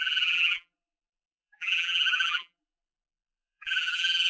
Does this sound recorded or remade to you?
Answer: remade